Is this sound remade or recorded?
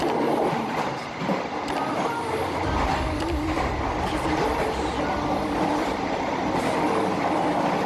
remade